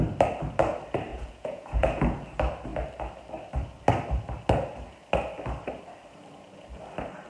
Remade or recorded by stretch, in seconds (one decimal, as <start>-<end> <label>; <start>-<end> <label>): 0.0-1.1 recorded; 1.1-2.0 remade; 2.0-7.3 recorded